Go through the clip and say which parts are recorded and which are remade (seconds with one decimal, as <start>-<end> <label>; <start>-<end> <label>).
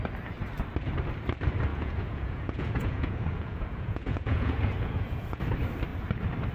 0.0-1.7 recorded; 1.7-5.4 remade; 5.4-6.5 recorded